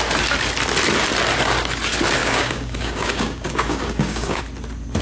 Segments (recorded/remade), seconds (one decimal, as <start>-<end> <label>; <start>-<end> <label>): 0.0-2.2 recorded; 2.2-4.4 remade; 4.4-5.0 recorded